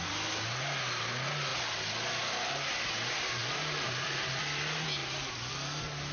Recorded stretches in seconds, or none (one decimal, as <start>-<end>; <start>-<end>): 0.0-3.4; 4.4-5.0; 5.5-6.1